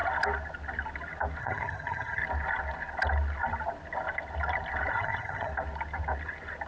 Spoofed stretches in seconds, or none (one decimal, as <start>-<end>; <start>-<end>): 1.4-2.2; 4.9-5.5